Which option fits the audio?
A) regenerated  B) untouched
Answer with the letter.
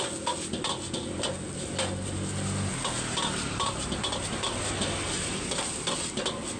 B